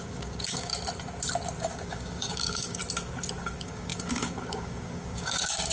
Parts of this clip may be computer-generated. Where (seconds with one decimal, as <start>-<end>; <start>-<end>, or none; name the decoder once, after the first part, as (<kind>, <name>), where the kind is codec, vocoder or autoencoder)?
0.0-0.7 (codec, DAC); 1.6-2.8; 3.4-5.7